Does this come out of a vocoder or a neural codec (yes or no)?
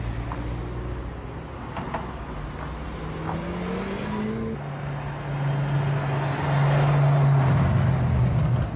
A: no